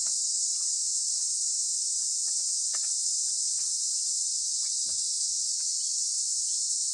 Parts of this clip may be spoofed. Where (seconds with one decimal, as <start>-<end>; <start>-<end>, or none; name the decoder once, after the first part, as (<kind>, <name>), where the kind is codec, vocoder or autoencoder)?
none